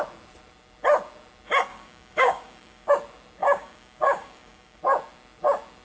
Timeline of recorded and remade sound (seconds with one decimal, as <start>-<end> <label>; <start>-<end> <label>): 0.0-1.7 recorded; 1.7-2.9 remade; 2.9-3.4 recorded; 3.4-4.8 remade; 4.8-5.8 recorded